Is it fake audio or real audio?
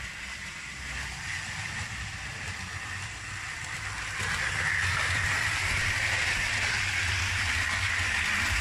fake